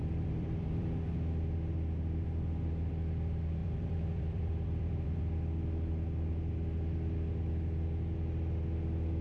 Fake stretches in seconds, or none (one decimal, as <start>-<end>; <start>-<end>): 0.0-1.1; 3.6-5.2